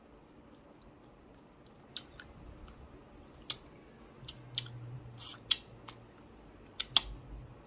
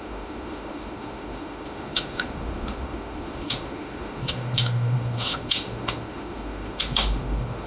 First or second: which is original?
first